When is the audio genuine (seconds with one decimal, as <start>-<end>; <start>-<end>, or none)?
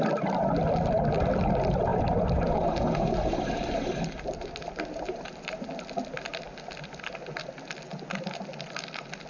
0.0-1.9; 5.7-9.3